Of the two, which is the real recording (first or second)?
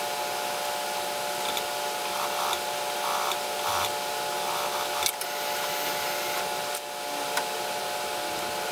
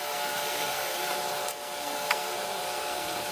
first